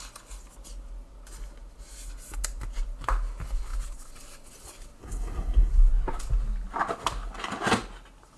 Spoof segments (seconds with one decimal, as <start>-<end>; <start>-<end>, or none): 5.0-5.7